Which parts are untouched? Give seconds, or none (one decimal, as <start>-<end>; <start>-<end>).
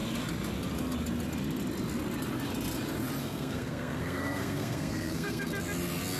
0.0-3.2; 5.5-6.2